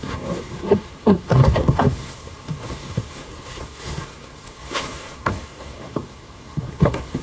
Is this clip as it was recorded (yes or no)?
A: no